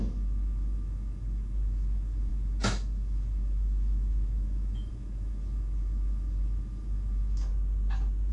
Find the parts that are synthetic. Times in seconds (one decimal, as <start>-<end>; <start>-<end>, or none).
0.0-7.5